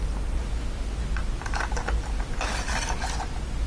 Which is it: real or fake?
real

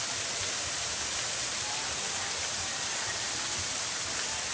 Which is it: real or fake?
real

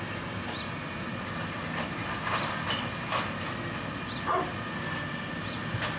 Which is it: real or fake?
real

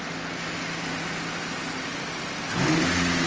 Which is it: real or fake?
real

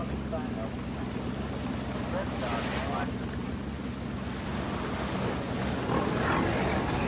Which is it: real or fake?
real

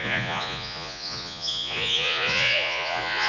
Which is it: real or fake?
fake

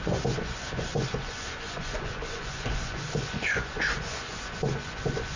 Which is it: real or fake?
fake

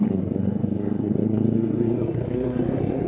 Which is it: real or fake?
fake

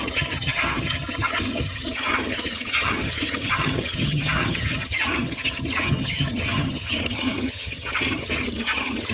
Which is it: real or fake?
fake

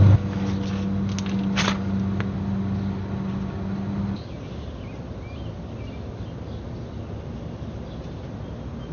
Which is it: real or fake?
real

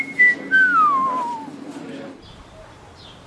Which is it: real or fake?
real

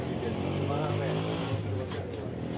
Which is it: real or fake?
real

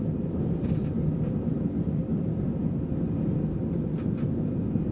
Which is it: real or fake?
real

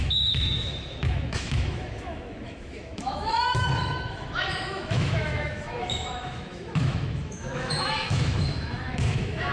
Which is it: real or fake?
fake